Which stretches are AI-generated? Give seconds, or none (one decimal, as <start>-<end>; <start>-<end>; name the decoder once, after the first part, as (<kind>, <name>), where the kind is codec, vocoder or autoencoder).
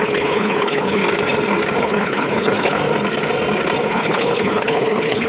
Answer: 0.0-1.0 (codec, HILCodec); 1.8-2.8; 3.9-5.3